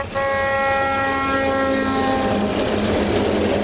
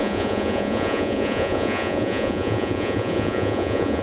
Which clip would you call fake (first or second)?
second